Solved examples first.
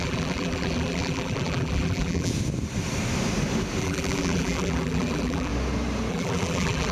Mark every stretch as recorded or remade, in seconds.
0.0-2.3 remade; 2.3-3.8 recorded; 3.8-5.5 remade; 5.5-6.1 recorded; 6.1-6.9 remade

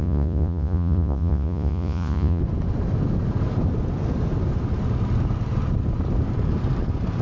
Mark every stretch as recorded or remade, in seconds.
0.0-2.4 remade; 2.4-7.2 recorded

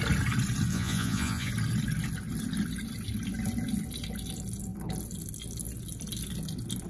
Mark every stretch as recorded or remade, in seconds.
0.0-0.7 recorded; 0.7-1.5 remade; 1.5-6.9 recorded